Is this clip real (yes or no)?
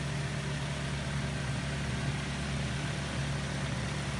yes